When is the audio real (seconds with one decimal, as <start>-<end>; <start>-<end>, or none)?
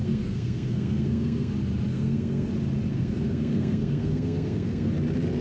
1.5-1.9; 2.5-2.9; 4.9-5.4